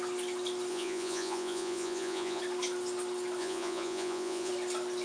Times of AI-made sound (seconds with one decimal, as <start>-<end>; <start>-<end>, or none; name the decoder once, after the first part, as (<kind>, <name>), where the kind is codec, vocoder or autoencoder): 0.7-2.4 (vocoder, Vocos); 3.4-4.5